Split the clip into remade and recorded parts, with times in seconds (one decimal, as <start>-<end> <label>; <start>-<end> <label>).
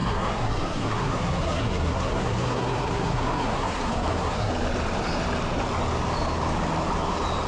0.0-4.5 remade; 4.5-7.5 recorded